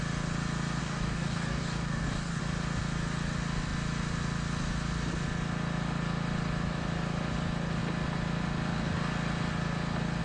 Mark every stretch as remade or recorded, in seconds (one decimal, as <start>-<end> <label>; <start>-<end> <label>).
0.0-0.8 recorded; 0.8-2.4 remade; 2.4-10.2 recorded

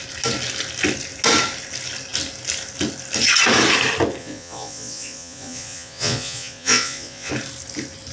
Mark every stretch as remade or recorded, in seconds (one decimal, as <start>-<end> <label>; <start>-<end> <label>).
0.0-4.2 recorded; 4.2-7.3 remade; 7.3-8.1 recorded

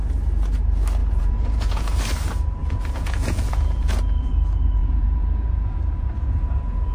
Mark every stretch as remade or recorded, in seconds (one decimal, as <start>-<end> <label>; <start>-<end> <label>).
0.0-1.0 recorded; 1.0-2.0 remade; 2.0-2.6 recorded; 2.6-4.3 remade; 4.3-4.8 recorded; 4.8-6.9 remade

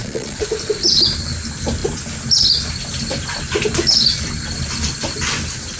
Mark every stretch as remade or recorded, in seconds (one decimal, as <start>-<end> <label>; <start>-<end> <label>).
0.0-0.5 remade; 0.5-5.8 recorded

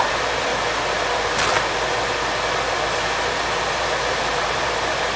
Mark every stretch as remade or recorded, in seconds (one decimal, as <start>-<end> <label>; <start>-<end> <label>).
0.0-0.5 remade; 0.5-3.6 recorded; 3.6-5.2 remade